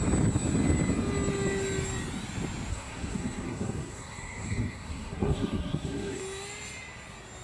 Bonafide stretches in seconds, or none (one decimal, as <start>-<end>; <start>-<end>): 0.0-2.7; 6.2-7.4